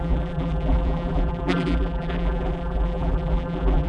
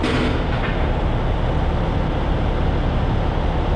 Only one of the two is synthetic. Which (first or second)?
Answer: first